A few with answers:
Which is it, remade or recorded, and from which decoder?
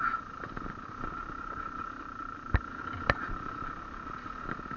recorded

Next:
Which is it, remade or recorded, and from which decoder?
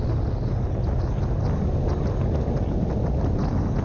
recorded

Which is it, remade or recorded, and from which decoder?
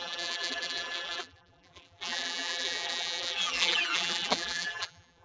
remade, vocoder, BigVGAN v2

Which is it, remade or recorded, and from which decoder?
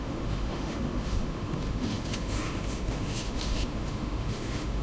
remade, autoencoder, DAC-VAE